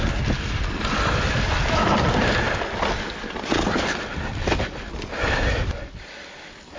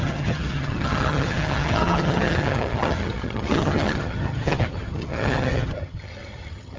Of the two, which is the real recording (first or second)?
first